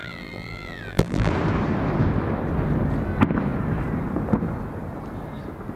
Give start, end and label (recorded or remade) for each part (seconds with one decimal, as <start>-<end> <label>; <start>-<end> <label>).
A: 0.0-1.3 remade; 1.3-5.8 recorded